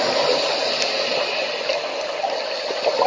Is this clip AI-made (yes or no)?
no